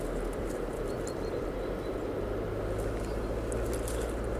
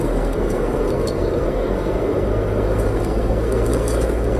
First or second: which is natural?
first